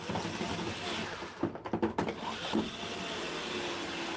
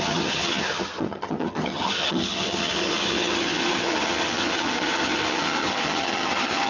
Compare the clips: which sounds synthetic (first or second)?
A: second